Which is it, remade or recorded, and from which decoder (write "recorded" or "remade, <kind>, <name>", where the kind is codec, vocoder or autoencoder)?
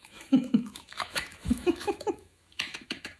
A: remade, autoencoder, DAC-VAE